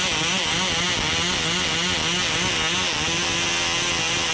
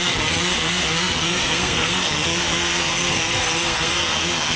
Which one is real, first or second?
first